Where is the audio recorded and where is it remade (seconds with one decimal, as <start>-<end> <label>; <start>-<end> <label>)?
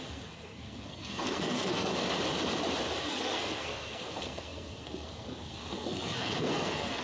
0.0-1.9 remade; 1.9-3.0 recorded; 3.0-7.0 remade